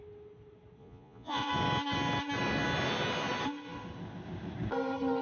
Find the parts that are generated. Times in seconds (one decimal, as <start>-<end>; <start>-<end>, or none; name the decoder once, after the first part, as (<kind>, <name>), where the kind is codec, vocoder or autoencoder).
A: 0.8-1.5 (vocoder, Vocos)